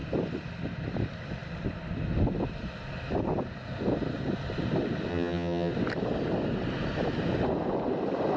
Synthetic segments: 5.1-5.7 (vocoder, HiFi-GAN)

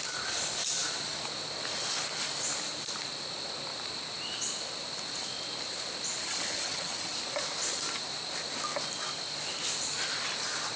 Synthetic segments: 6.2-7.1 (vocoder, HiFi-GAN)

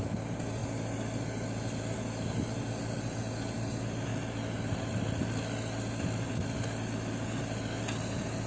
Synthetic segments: none

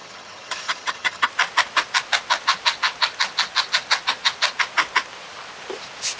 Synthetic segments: 0.0-1.3 (vocoder, HiFi-GAN)